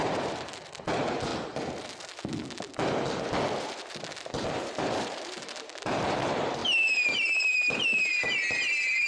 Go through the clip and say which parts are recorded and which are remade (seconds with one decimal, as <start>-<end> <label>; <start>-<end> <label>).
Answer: 0.0-1.3 remade; 1.3-3.6 recorded; 3.6-6.6 remade; 6.6-7.1 recorded; 7.1-9.1 remade